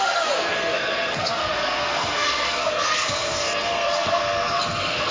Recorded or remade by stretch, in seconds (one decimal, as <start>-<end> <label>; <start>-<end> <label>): 0.0-5.1 remade